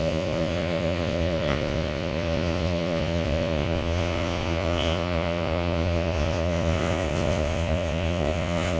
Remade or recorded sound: remade